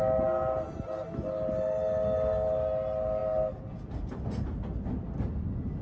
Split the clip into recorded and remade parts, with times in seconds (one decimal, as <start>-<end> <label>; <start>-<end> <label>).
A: 0.0-5.8 recorded